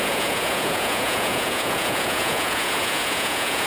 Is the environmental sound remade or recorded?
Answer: remade